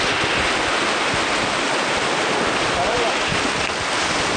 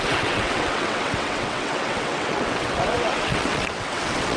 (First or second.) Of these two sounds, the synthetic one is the second